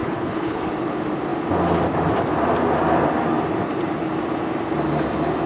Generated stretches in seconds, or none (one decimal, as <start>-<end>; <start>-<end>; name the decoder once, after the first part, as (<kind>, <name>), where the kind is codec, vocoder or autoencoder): 0.0-0.7 (codec, HILCodec)